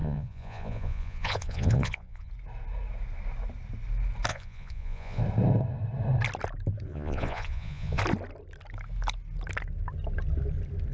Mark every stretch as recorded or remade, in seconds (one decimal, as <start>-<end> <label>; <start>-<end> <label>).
0.0-2.3 remade; 2.3-4.3 recorded; 4.3-5.2 remade; 5.2-6.9 recorded; 6.9-8.0 remade; 8.0-10.9 recorded